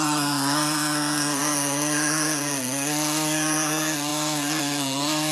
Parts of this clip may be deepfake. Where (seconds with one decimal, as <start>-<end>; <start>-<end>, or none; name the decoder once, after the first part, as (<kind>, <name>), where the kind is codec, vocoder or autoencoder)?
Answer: 0.0-5.3 (codec, SNAC)